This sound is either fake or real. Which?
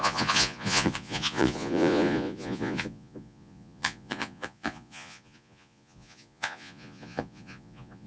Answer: fake